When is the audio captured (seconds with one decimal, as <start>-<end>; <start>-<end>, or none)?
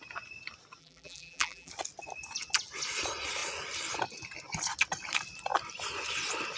0.0-0.8; 1.7-6.6